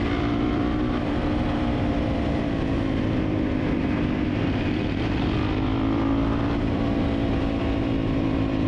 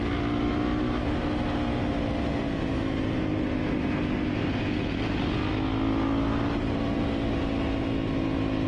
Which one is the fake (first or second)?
first